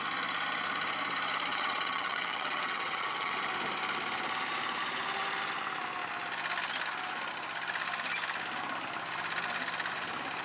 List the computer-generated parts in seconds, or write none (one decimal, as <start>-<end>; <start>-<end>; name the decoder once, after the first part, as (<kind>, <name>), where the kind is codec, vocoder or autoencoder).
1.5-3.3 (vocoder, WaveNeXt)